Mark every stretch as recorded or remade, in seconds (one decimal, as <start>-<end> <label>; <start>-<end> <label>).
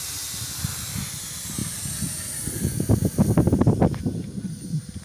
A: 0.0-5.0 recorded